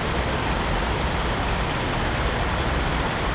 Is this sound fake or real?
real